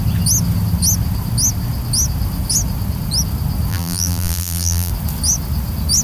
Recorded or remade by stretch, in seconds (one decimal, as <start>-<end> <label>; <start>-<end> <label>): 0.0-3.7 recorded; 3.7-4.9 remade; 4.9-6.0 recorded